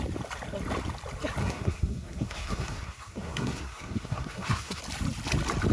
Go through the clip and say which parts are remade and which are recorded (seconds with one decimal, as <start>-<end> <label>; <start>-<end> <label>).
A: 0.0-1.4 recorded; 1.4-4.8 remade; 4.8-5.7 recorded